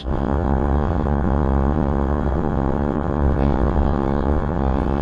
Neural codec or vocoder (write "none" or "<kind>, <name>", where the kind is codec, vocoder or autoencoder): vocoder, WaveNeXt